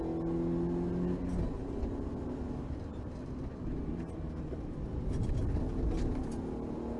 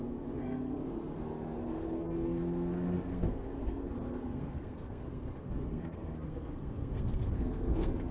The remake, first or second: second